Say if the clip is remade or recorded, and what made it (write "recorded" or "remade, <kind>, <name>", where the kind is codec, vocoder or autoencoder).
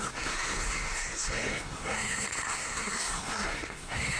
remade, codec, SNAC